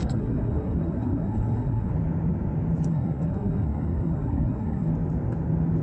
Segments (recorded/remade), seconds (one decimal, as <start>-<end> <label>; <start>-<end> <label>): 0.0-1.9 remade; 1.9-2.9 recorded; 2.9-4.9 remade; 4.9-5.8 recorded